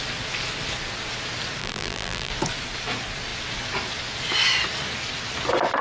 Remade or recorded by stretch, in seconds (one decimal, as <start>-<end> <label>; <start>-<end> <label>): 0.0-1.6 recorded; 1.6-2.3 remade; 2.3-5.8 recorded